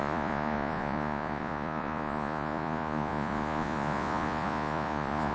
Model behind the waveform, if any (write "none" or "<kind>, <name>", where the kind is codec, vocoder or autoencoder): vocoder, Vocos